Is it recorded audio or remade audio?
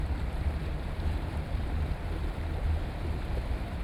remade